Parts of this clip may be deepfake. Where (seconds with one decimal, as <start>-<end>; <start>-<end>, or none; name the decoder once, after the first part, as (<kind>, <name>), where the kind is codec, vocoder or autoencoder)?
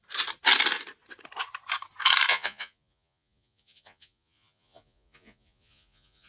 2.3-6.3 (vocoder, Vocos)